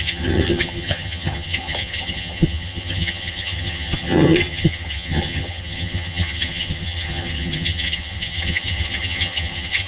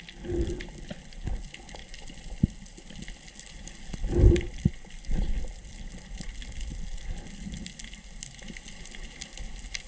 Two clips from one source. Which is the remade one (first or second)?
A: first